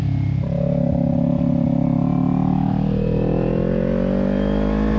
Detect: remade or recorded recorded